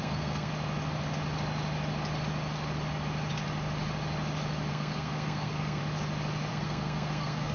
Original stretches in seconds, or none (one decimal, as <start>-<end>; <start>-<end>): 0.5-4.7; 5.8-6.5